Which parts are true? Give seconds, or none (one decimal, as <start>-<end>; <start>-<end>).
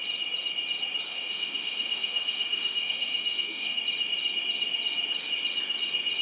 0.0-1.1; 3.8-6.2